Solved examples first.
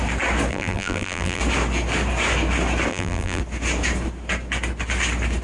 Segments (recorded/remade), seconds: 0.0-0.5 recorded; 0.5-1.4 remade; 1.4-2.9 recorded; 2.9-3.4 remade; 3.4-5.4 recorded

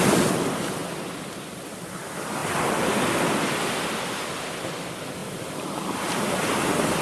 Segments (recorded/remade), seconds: 0.0-5.2 recorded; 5.2-6.3 remade; 6.3-7.0 recorded

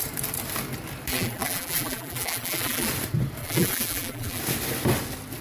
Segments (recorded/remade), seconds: 0.0-1.1 recorded; 1.1-2.9 remade; 2.9-3.4 recorded; 3.4-4.4 remade; 4.4-5.4 recorded

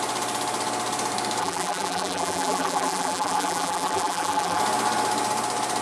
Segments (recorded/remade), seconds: 0.0-1.4 recorded; 1.4-4.6 remade; 4.6-5.8 recorded

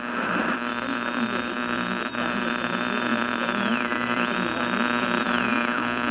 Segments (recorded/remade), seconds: 0.0-0.7 remade; 0.7-1.5 recorded; 1.5-6.1 remade

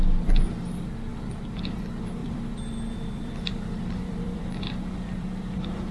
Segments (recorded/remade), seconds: 0.0-2.2 recorded; 2.2-5.9 remade